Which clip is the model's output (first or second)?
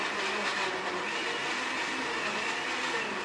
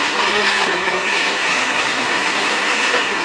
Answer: second